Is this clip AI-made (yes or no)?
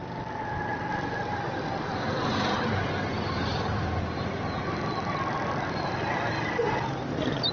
no